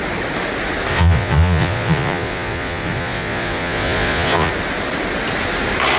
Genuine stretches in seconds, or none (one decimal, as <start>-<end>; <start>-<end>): 0.0-0.9; 4.5-6.0